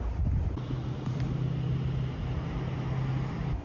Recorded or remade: recorded